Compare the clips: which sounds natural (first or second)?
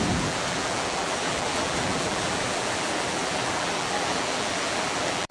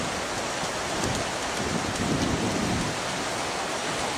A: second